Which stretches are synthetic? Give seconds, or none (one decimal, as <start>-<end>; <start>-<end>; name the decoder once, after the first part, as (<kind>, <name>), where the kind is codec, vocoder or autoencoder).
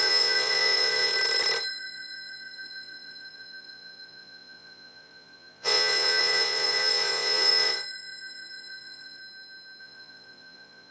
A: 0.0-1.1 (vocoder, Vocos); 1.7-9.2; 9.8-10.9